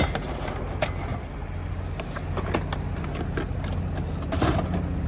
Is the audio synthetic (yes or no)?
no